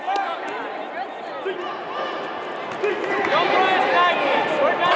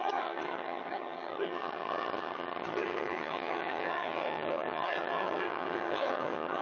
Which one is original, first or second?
first